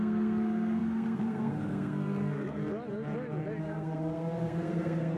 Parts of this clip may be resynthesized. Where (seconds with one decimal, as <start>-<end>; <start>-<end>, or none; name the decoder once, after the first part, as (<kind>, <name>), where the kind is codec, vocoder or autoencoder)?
0.0-2.6 (codec, SNAC); 3.6-5.2